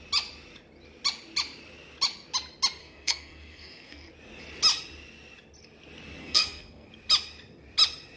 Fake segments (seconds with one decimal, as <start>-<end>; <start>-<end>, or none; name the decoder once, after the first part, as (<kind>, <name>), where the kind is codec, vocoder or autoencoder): 2.8-4.1 (codec, SNAC); 6.2-6.9